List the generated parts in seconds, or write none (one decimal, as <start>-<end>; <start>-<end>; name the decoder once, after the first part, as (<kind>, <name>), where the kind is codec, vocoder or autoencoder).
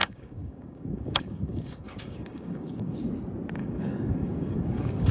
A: 0.0-3.1 (codec, DAC); 3.6-5.1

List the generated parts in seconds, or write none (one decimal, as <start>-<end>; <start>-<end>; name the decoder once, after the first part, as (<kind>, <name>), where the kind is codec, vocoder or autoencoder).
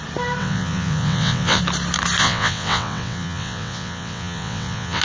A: 0.4-1.6 (vocoder, WaveNeXt); 2.2-5.0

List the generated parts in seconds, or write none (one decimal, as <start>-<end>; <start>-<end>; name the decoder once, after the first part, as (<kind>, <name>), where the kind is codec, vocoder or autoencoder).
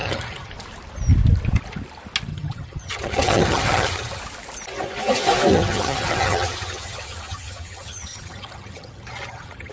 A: 0.0-0.5 (vocoder, HiFi-GAN); 2.3-4.2; 5.5-9.7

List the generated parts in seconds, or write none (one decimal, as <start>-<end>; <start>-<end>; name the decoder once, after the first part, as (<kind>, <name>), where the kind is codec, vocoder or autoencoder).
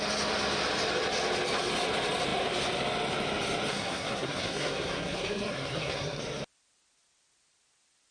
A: 3.7-6.2 (codec, SNAC)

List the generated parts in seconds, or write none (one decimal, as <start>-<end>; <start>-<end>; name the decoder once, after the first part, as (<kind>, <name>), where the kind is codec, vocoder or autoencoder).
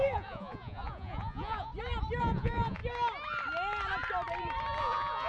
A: 0.0-1.7 (vocoder, Vocos); 2.2-2.8; 4.8-5.3